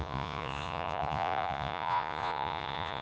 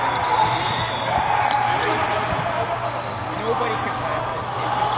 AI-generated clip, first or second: first